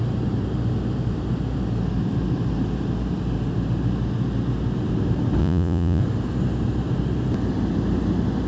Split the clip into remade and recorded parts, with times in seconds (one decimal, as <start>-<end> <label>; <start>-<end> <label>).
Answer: 0.0-5.4 recorded; 5.4-6.0 remade; 6.0-8.5 recorded